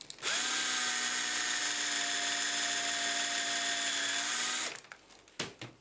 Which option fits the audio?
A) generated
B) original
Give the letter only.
B